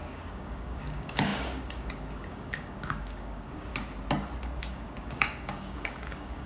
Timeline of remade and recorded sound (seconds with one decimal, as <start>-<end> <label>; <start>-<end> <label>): 0.0-3.7 remade; 3.7-4.6 recorded; 4.6-6.5 remade